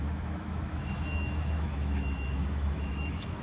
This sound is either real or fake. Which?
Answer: fake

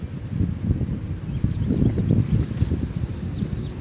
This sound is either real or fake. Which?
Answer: real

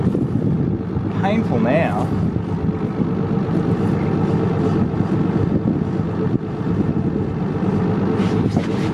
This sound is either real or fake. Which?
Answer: real